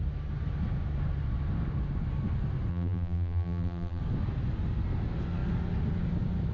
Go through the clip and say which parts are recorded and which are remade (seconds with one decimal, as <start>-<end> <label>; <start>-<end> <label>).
0.0-2.7 recorded; 2.7-4.0 remade; 4.0-6.5 recorded